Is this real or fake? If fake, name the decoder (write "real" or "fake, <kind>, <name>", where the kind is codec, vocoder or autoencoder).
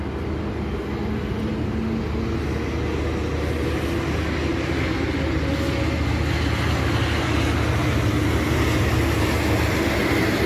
real